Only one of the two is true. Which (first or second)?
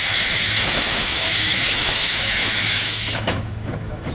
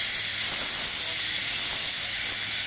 second